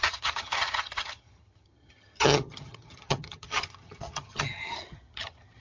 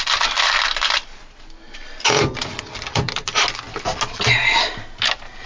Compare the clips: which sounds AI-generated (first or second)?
first